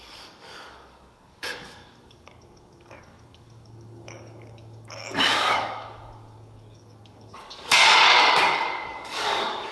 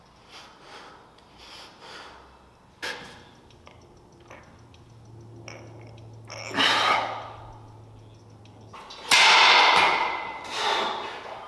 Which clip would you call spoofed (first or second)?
first